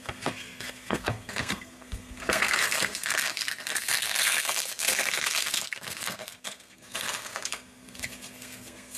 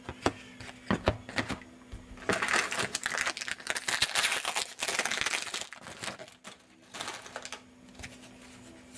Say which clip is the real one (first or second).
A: second